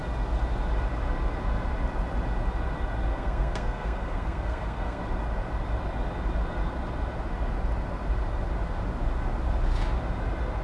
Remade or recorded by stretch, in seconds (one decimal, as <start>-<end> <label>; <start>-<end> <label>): 0.0-3.1 recorded; 3.1-5.0 remade; 5.0-10.6 recorded